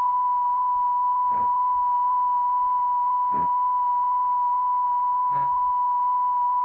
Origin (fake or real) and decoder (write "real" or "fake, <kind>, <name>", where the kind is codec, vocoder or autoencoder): real